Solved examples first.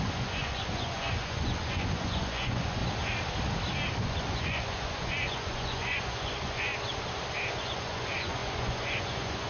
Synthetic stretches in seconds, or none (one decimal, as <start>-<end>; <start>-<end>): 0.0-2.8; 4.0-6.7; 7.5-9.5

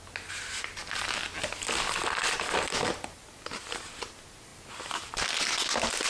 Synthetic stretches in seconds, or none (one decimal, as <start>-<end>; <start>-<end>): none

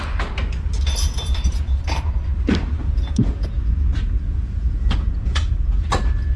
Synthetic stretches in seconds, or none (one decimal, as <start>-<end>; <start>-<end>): 2.8-5.5

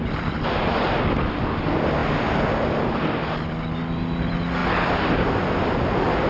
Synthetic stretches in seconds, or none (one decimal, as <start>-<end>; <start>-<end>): none

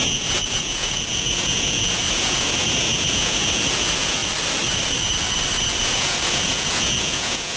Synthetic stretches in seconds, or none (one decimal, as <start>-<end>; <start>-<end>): 0.0-4.2; 5.8-7.6

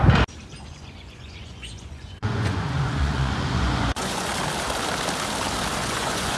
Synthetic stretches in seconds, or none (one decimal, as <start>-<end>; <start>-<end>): 0.5-4.3; 5.8-6.4

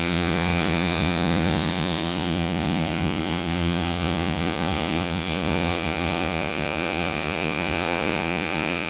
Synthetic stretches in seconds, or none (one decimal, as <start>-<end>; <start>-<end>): 0.0-8.9

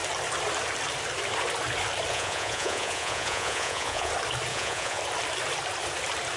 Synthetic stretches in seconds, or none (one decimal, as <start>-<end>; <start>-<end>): 2.1-4.1; 4.5-5.0